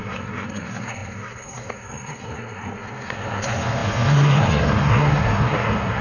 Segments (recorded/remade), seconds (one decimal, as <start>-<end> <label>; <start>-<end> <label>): 0.0-6.0 remade